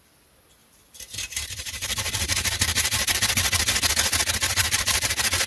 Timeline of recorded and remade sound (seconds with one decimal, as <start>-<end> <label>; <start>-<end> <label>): 0.0-0.6 recorded; 0.6-3.2 remade; 3.2-4.6 recorded; 4.6-5.1 remade; 5.1-5.5 recorded